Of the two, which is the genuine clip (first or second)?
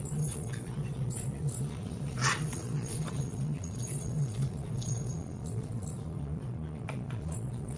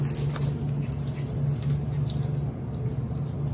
second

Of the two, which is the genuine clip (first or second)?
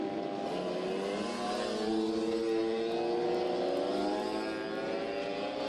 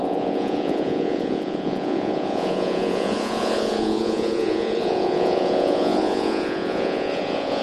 first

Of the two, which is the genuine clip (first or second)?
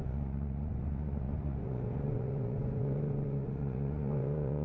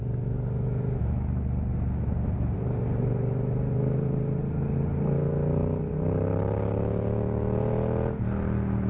second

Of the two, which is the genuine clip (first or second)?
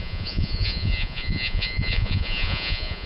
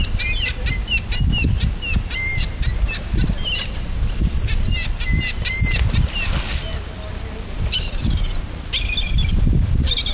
second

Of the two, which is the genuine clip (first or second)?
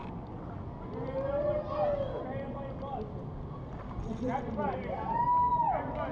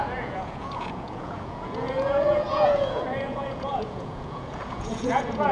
first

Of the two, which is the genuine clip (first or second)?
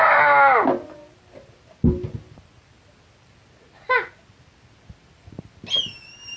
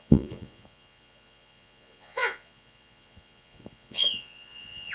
first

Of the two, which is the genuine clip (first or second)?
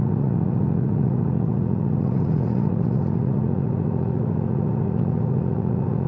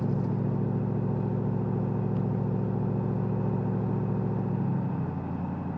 second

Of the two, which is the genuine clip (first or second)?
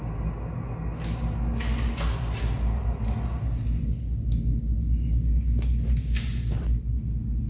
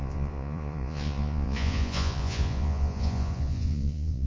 first